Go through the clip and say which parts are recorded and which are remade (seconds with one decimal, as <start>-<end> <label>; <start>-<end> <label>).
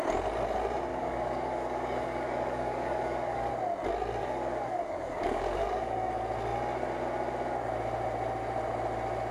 0.0-0.9 recorded; 0.9-3.5 remade; 3.5-4.2 recorded; 4.2-6.1 remade; 6.1-9.3 recorded